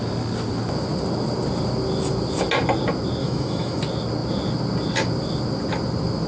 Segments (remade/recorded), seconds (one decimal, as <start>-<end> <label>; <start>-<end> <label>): 0.0-3.2 recorded; 3.2-3.8 remade; 3.8-6.3 recorded